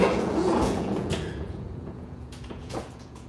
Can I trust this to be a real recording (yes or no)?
no